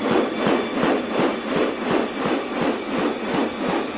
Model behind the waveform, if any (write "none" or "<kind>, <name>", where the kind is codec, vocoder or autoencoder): none